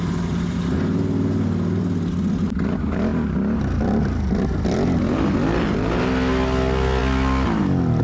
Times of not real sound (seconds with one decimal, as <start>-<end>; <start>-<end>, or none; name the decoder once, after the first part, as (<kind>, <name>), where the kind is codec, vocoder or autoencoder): none